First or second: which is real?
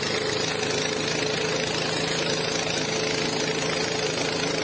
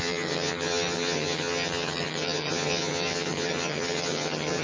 first